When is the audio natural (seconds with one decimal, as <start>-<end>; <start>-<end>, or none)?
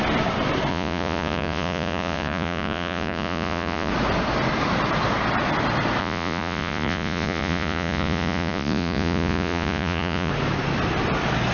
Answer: 0.0-0.7; 3.9-6.0; 10.3-11.5